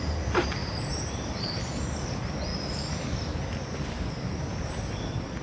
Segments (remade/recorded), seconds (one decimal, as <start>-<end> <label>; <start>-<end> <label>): 0.0-0.6 recorded; 0.6-1.6 remade; 1.6-5.4 recorded